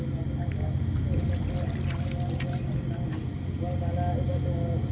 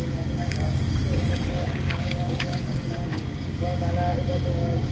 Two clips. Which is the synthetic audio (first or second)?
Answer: second